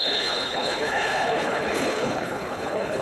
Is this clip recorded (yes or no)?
no